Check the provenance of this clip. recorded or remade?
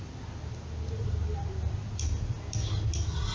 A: recorded